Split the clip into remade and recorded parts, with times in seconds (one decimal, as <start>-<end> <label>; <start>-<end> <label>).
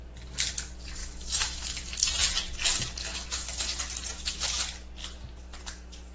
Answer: 0.0-1.0 recorded; 1.0-2.2 remade; 2.2-3.1 recorded; 3.1-3.8 remade; 3.8-6.1 recorded